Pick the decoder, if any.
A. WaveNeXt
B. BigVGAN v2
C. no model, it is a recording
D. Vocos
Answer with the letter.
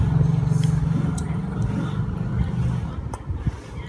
C